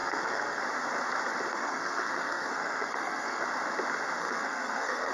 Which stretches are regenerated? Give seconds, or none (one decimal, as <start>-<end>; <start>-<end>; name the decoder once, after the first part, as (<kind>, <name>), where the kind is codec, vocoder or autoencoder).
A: 0.0-0.6 (codec, SNAC); 1.5-3.4; 4.2-5.1